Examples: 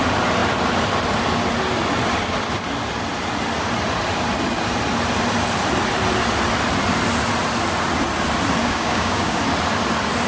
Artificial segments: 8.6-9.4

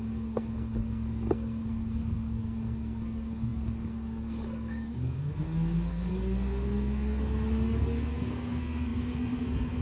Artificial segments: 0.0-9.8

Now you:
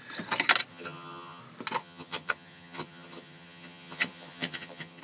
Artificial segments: 0.7-1.4; 1.8-5.0

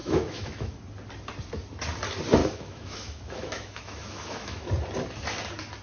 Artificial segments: 0.0-0.8; 2.4-4.7